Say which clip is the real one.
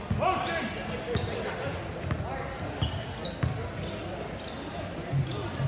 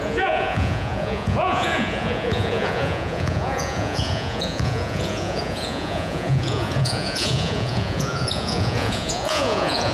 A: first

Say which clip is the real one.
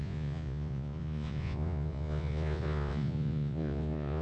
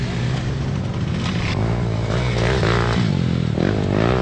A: second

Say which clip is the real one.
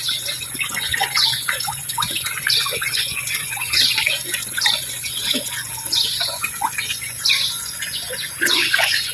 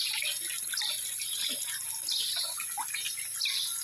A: second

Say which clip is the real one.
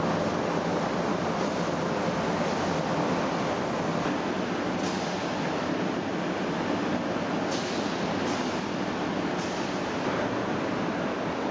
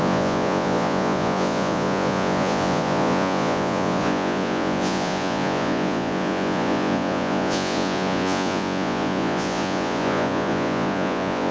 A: first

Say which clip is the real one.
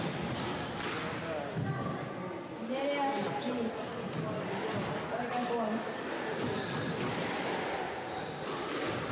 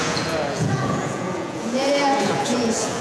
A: first